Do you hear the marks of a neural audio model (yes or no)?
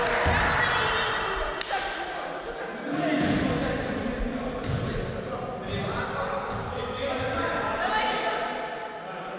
no